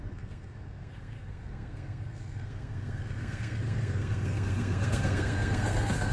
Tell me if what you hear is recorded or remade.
remade